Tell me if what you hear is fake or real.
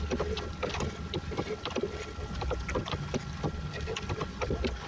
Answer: real